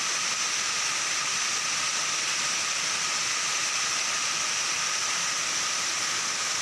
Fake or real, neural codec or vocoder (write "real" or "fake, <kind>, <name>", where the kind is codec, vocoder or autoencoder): real